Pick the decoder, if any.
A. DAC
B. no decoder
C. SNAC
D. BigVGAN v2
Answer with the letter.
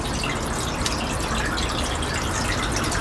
B